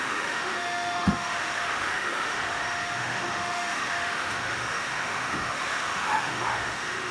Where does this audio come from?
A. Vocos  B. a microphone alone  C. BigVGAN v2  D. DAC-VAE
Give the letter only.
D